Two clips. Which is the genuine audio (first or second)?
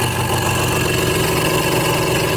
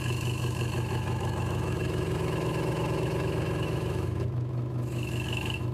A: first